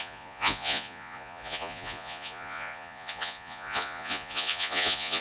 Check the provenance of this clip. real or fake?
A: fake